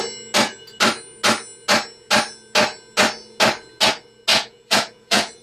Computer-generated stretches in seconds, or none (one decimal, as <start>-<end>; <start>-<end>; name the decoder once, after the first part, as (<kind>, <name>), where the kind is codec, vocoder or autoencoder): 4.3-5.4 (vocoder, Vocos)